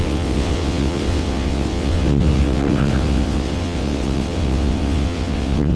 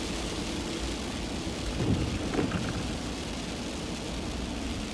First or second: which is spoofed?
first